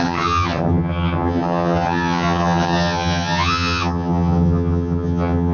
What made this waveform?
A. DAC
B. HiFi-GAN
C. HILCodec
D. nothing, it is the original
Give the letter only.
B